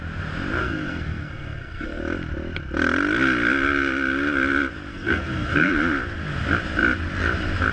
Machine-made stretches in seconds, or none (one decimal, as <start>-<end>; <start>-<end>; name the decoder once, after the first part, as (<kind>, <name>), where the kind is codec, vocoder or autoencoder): 0.6-2.0 (codec, SNAC); 4.9-5.7